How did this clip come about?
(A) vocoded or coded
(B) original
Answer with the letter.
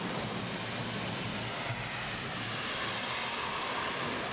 B